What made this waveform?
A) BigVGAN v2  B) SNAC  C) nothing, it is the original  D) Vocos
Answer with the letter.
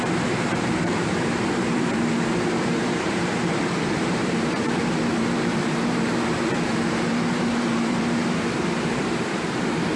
A